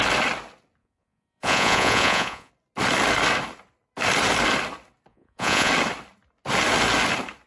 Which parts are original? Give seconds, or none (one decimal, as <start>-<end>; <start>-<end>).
0.0-0.8; 2.5-5.1; 5.7-7.5